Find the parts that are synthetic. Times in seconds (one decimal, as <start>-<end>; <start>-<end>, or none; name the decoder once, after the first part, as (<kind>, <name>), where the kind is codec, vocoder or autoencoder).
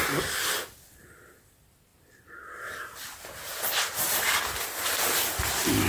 none